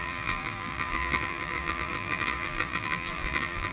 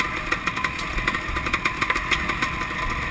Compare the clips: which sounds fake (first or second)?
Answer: first